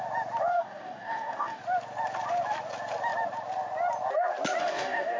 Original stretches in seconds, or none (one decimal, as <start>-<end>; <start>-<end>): 0.0-0.5; 1.6-4.6